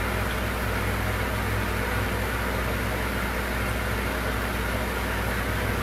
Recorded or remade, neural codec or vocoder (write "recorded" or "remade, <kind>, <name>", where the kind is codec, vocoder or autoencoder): recorded